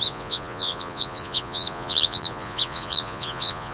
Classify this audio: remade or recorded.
remade